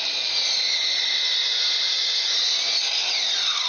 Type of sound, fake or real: real